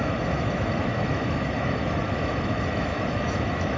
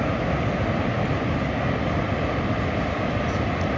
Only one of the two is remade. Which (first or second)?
first